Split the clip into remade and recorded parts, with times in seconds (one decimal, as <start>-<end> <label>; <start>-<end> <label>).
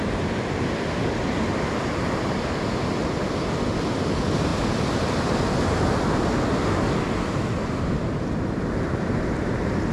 0.0-9.9 recorded